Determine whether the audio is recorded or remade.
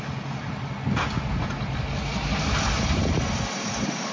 recorded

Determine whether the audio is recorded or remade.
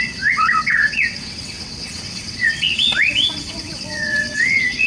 remade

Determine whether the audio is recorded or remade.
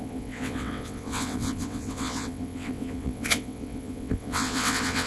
remade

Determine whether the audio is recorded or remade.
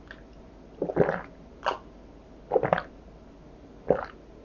recorded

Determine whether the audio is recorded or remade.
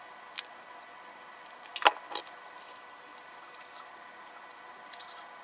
recorded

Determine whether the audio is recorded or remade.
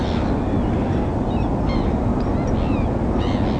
recorded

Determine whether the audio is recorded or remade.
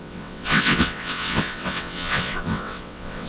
remade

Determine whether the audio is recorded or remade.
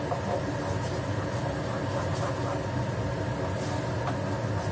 recorded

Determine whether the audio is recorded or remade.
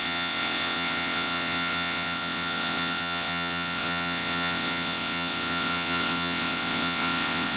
remade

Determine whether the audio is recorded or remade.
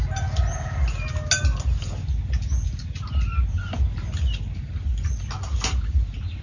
recorded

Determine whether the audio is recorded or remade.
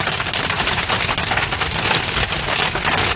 recorded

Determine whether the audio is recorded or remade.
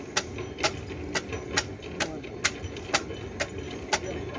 recorded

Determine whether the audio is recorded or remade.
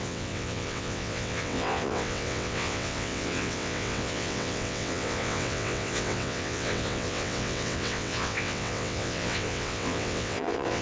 remade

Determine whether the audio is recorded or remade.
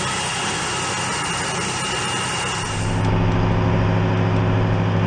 recorded